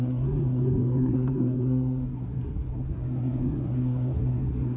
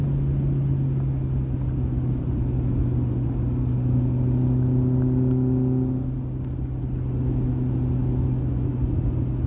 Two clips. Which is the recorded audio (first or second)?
second